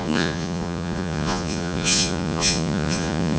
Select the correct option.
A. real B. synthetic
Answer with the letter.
B